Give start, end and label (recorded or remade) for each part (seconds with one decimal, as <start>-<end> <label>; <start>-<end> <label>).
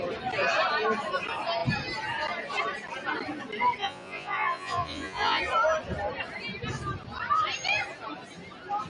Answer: 0.0-3.8 recorded; 3.8-5.4 remade; 5.4-8.9 recorded